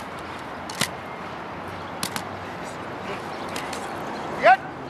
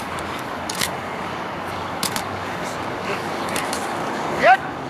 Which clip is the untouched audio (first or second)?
first